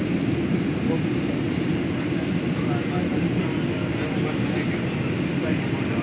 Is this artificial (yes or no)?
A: no